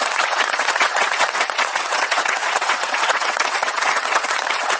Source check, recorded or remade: remade